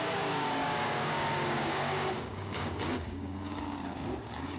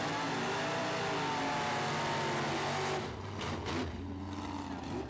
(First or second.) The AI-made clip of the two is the first